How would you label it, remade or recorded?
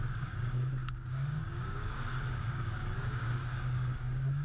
remade